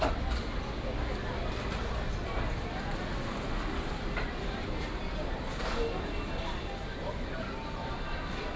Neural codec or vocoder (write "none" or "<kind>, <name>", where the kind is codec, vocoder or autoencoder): none